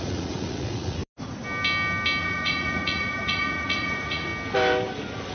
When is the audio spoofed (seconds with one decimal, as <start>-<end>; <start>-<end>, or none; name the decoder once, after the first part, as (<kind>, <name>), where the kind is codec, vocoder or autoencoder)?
0.0-1.0 (vocoder, Vocos); 2.2-4.3